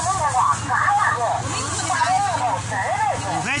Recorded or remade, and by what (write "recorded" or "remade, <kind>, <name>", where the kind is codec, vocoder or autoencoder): recorded